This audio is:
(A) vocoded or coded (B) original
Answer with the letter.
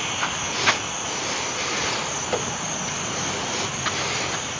B